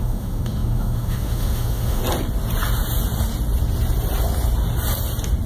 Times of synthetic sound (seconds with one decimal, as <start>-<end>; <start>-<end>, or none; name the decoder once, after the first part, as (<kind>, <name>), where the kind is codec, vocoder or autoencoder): 0.0-2.0 (autoencoder, DAC-VAE)